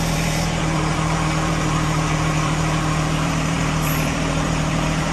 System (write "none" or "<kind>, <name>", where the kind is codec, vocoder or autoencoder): vocoder, BigVGAN v2